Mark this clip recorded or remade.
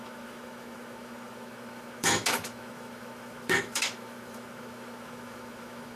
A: remade